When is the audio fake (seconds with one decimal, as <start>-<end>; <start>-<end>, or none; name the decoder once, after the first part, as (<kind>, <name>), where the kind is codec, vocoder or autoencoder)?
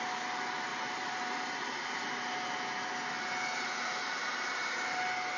0.7-2.0 (vocoder, BigVGAN v2); 4.2-5.0